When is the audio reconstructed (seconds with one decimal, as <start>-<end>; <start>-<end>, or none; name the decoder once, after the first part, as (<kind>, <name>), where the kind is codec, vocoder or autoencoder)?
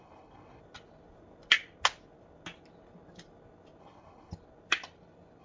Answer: 0.0-0.6 (codec, HILCodec); 3.8-4.3